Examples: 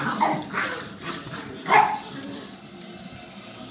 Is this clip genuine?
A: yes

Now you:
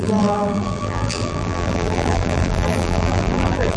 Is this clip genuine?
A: no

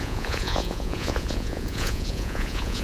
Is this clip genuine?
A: no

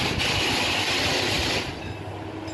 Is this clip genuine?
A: yes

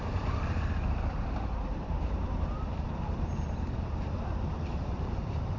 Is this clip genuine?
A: no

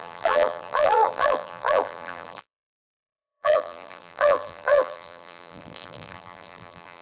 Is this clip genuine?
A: no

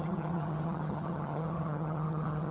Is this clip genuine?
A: no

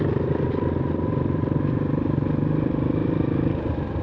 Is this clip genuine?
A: yes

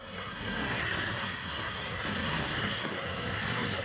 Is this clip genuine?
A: no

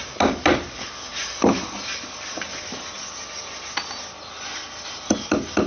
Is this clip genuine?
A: yes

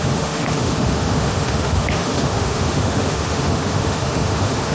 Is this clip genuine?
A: no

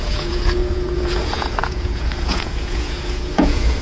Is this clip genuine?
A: no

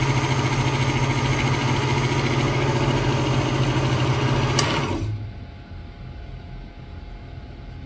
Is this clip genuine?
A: yes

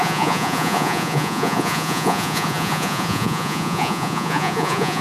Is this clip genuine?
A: no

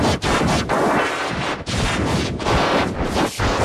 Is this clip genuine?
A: yes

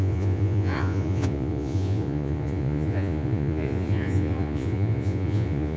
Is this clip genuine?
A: no